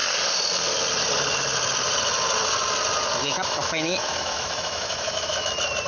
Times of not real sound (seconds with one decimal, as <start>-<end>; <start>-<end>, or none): 3.2-5.5